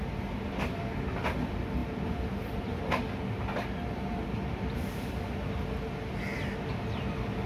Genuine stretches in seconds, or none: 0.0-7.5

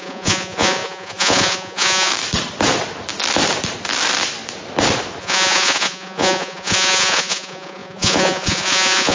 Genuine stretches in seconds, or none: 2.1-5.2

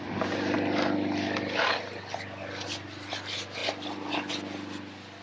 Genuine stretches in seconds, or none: 0.0-5.2

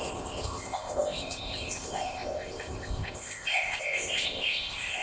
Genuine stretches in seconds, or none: none

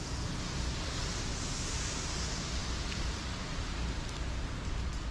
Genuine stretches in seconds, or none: 0.0-2.6; 4.1-5.1

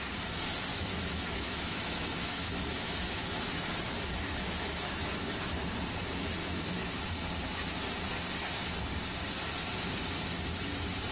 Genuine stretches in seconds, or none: 0.0-0.7; 5.6-6.4; 7.1-11.1